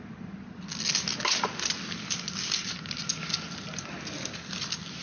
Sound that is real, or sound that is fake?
real